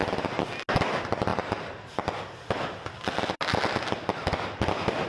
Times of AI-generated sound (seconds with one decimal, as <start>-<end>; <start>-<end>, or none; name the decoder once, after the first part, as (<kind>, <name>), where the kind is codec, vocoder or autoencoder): 1.3-1.9 (vocoder, BigVGAN v2)